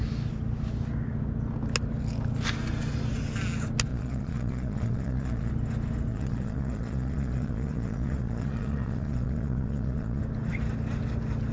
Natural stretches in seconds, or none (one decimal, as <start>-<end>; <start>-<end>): 0.0-3.9; 5.5-6.1; 10.2-11.5